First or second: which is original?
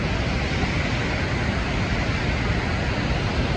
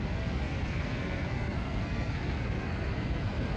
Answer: first